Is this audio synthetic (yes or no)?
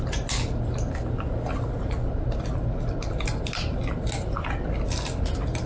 no